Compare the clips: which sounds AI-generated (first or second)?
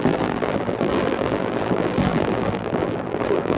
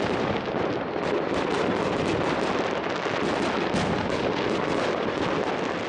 first